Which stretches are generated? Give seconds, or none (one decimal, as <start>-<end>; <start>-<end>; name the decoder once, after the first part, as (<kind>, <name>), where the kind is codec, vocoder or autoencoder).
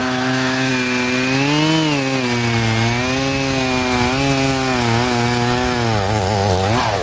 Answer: 0.0-0.7 (autoencoder, DAC-VAE)